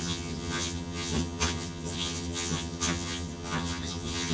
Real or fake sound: fake